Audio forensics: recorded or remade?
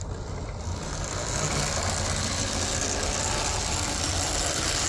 recorded